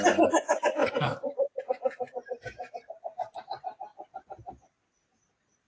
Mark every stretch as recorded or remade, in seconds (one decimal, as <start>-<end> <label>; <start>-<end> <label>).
0.0-5.7 recorded